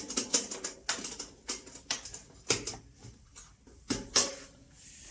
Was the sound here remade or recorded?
recorded